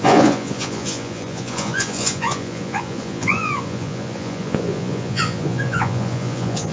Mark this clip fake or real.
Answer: fake